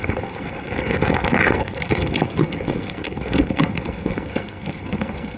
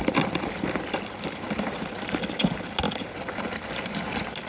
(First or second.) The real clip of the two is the second